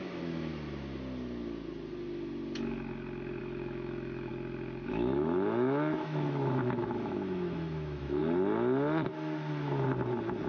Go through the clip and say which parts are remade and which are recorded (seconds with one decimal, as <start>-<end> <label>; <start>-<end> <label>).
0.0-0.5 remade; 0.5-3.4 recorded; 3.4-4.3 remade; 4.3-4.9 recorded; 4.9-8.2 remade; 8.2-10.5 recorded